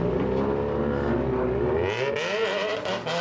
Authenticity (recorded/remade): recorded